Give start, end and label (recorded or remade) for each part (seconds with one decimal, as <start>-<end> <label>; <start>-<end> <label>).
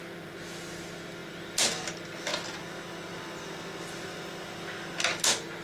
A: 0.0-5.6 recorded